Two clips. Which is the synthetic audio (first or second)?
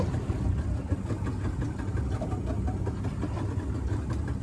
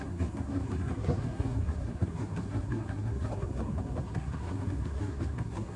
second